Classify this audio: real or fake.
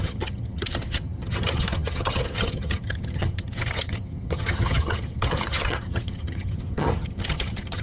fake